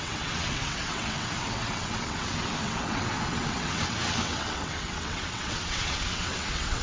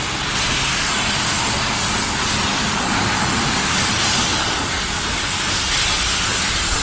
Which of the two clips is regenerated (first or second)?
first